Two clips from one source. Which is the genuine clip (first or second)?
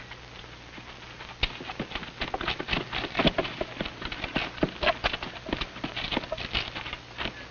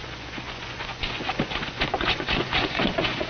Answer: first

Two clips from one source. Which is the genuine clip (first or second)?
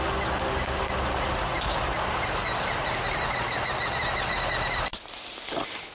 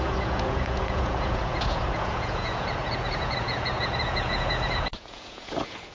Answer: first